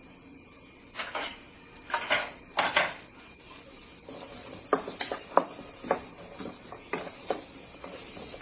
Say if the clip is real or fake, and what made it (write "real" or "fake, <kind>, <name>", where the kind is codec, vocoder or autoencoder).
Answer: real